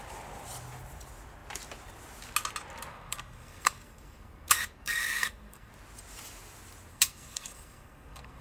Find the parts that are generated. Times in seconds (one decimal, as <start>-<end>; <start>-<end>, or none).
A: 2.9-5.7; 6.9-8.4